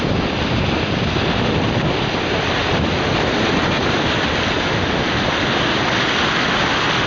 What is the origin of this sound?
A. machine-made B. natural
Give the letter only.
B